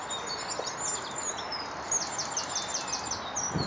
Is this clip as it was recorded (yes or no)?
yes